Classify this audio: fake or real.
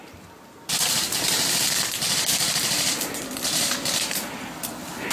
real